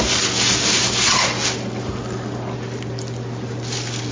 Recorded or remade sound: recorded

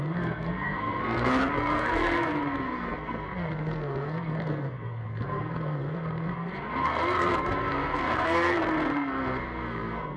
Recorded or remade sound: remade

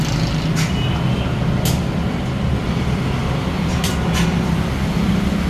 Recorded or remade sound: recorded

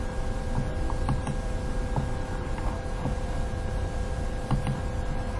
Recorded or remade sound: recorded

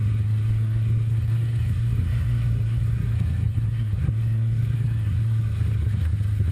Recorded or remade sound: remade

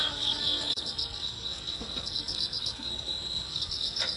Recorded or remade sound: remade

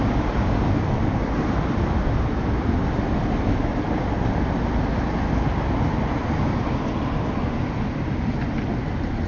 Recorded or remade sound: recorded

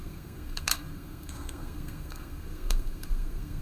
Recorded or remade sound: remade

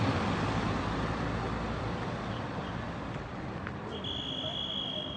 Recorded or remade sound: recorded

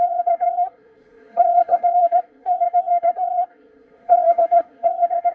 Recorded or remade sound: remade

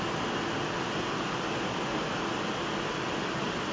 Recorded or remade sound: recorded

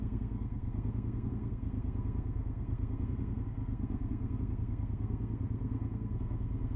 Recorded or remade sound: remade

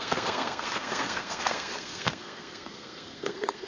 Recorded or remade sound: remade